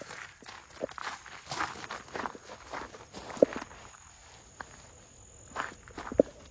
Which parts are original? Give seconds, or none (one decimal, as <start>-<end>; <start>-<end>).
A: 0.0-6.5